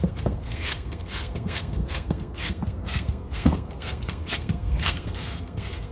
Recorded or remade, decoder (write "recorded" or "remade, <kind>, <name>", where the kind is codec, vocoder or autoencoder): remade, codec, SNAC